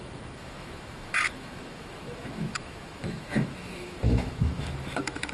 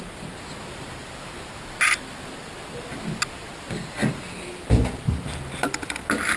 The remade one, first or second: first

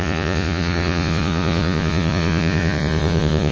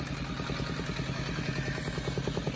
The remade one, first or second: first